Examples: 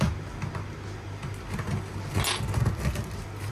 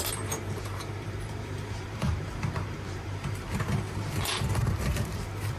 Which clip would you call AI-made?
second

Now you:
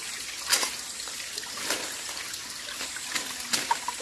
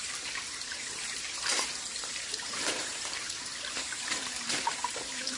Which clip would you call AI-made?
second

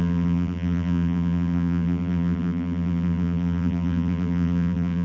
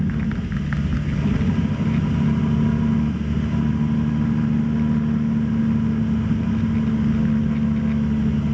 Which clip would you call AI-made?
first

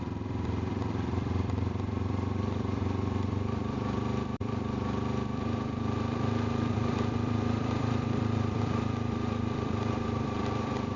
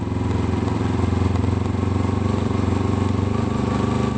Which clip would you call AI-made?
first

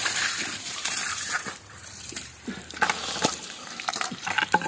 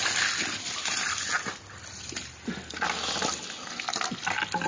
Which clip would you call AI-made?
first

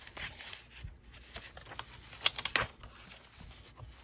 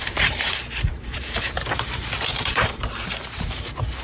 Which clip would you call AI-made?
second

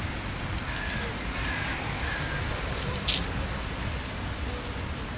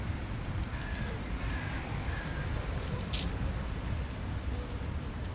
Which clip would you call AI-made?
second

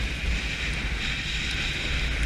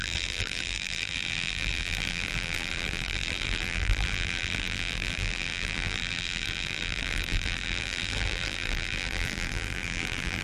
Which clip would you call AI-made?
second